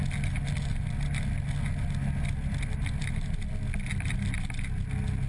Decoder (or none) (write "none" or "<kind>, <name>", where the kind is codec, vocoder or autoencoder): none